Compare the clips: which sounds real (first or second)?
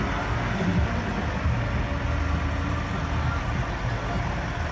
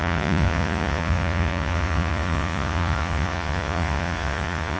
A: first